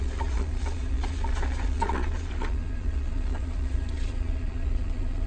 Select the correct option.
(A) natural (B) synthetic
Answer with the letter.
B